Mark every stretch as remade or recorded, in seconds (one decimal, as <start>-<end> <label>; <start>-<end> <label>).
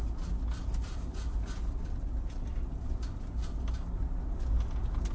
0.0-5.1 recorded